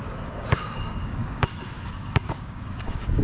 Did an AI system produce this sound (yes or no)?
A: yes